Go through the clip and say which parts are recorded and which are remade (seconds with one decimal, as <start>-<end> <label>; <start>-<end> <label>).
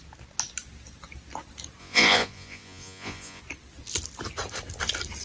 0.0-1.8 recorded; 1.8-3.4 remade; 3.4-5.2 recorded